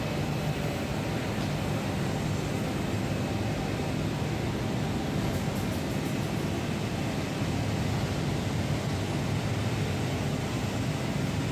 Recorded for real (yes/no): yes